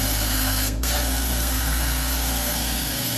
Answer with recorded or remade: remade